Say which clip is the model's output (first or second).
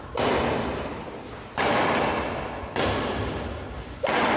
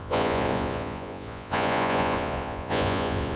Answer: second